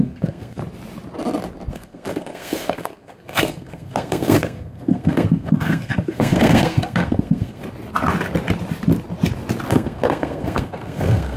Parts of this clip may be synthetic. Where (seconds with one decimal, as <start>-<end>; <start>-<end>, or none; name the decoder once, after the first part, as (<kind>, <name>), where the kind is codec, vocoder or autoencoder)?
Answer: 0.0-0.6 (codec, SNAC); 1.7-7.6; 9.7-11.4